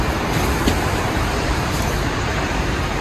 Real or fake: fake